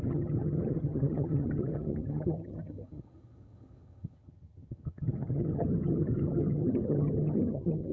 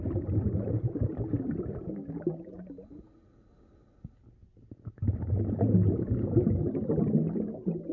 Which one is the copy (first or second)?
first